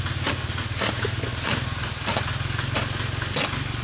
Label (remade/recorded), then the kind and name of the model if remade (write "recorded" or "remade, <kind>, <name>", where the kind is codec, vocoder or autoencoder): recorded